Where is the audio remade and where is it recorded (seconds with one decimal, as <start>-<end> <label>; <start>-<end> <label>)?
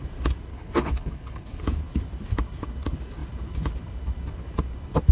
0.0-0.5 recorded; 0.5-1.6 remade; 1.6-5.1 recorded